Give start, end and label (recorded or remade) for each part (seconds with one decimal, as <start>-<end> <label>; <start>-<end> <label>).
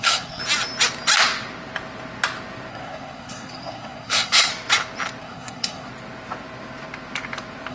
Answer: 0.0-0.4 remade; 0.4-2.7 recorded; 2.7-4.5 remade; 4.5-5.2 recorded; 5.2-5.9 remade; 5.9-7.7 recorded